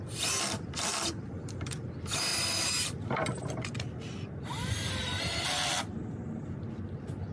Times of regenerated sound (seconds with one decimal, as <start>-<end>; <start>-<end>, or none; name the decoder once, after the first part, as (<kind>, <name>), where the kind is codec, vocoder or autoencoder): 2.3-4.3 (vocoder, BigVGAN v2); 5.0-5.7